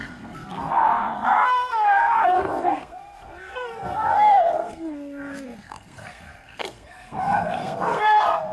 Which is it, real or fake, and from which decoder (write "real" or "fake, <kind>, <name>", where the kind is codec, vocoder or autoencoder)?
fake, codec, SNAC